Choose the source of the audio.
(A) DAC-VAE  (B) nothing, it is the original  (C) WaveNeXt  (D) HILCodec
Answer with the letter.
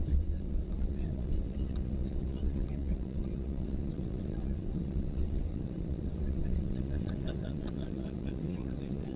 C